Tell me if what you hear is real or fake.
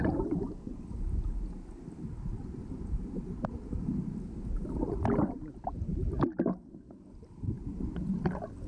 real